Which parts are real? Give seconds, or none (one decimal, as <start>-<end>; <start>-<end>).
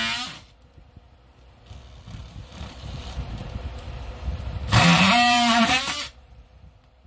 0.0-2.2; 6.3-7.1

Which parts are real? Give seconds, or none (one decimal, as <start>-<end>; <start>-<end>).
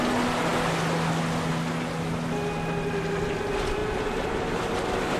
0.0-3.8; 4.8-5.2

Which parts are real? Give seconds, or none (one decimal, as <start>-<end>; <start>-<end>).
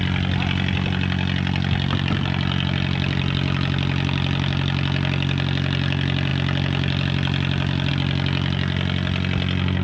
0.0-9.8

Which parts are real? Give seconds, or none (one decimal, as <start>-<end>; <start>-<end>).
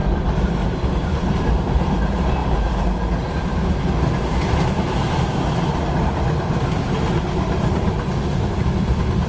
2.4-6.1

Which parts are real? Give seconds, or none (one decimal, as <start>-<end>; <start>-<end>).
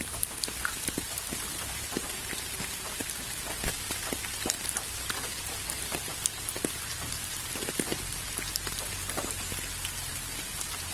3.0-5.4; 6.2-7.3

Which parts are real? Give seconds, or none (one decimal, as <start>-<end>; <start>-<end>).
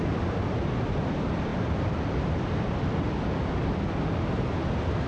0.0-1.5; 3.1-5.1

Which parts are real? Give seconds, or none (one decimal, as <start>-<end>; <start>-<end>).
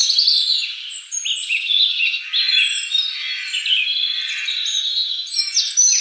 0.0-6.0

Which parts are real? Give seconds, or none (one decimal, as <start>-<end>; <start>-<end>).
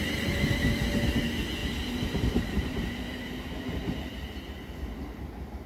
0.0-1.6; 3.3-5.7